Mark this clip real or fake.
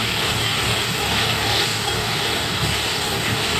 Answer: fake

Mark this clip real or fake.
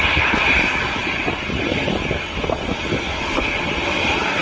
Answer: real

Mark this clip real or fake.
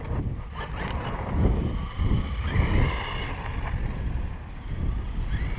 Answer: real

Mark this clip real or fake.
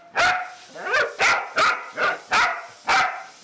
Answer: real